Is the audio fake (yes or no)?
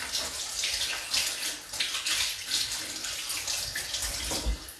no